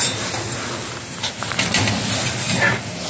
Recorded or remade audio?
recorded